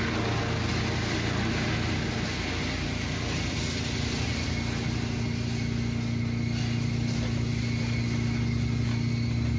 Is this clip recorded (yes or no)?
yes